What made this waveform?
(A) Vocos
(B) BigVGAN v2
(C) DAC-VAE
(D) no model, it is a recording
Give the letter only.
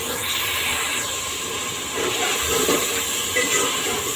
B